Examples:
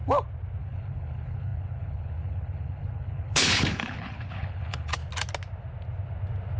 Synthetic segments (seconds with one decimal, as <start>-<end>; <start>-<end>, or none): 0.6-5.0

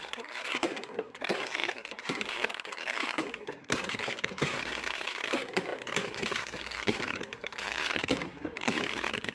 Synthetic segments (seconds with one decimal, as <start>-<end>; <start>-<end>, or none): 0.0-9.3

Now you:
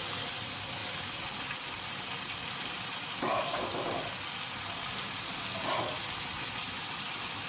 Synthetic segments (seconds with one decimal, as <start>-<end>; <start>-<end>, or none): 0.8-5.2

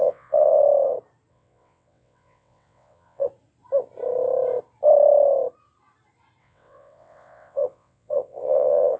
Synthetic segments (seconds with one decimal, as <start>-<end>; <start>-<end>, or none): 0.0-0.6; 1.3-3.3; 6.4-9.0

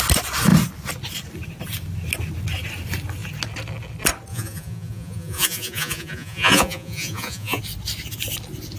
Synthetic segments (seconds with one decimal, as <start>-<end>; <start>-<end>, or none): 4.3-7.6

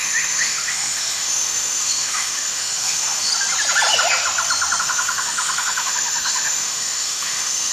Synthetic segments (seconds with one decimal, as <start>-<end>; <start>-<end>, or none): 0.0-3.3; 4.8-7.7

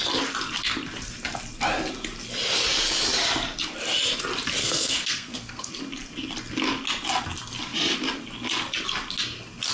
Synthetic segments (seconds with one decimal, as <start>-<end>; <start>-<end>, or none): 4.6-5.7

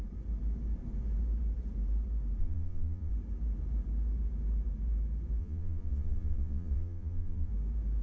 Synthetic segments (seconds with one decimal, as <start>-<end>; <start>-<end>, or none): 2.4-3.1; 5.4-7.5